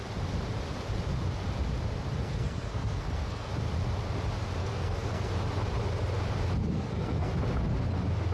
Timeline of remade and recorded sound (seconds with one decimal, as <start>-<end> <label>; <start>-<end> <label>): 0.0-2.2 recorded; 2.2-3.5 remade; 3.5-4.6 recorded; 4.6-5.3 remade; 5.3-6.6 recorded; 6.6-7.3 remade; 7.3-8.3 recorded